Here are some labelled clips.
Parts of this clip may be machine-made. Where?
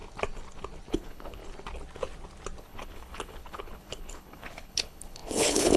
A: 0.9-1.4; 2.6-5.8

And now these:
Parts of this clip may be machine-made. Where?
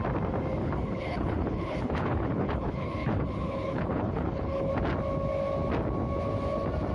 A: 0.6-4.7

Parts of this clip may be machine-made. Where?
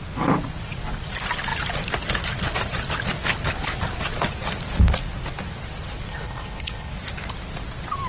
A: 6.1-6.9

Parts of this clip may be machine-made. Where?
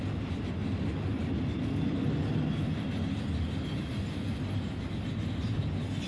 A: none